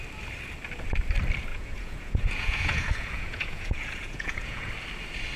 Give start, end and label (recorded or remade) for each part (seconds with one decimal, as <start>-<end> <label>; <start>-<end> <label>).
0.0-1.5 recorded; 1.5-4.7 remade; 4.7-5.4 recorded